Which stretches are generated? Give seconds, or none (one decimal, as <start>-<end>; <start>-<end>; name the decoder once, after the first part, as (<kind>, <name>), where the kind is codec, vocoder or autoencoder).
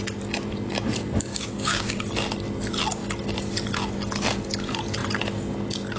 1.3-2.0 (codec, DAC)